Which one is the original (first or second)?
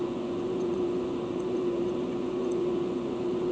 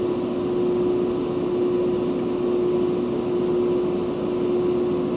second